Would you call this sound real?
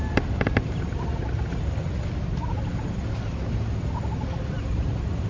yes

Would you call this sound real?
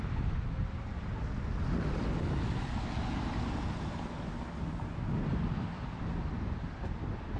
yes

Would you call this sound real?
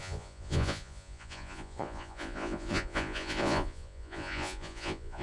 no